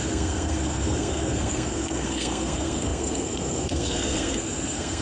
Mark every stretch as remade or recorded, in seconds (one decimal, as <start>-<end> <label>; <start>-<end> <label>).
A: 0.0-5.0 remade